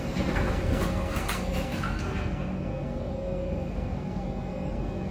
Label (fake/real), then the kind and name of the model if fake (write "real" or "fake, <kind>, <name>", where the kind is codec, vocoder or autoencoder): fake, codec, SNAC